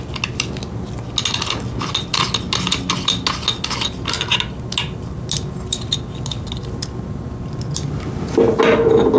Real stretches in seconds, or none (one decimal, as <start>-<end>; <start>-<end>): 0.0-9.2